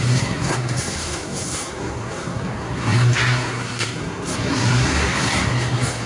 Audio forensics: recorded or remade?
remade